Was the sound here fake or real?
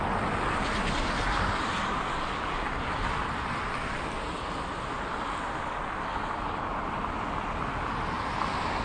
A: real